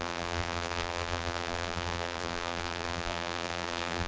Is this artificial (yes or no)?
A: yes